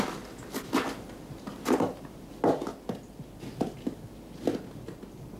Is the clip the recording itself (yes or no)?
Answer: yes